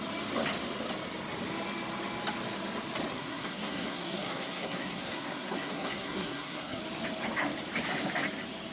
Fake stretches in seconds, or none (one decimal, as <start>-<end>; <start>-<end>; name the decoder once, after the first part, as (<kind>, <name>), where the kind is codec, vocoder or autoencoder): 3.1-6.8 (codec, SNAC)